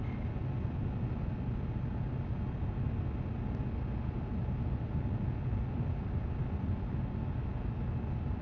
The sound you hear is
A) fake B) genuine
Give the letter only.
B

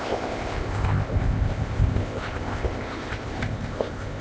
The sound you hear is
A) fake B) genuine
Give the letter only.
A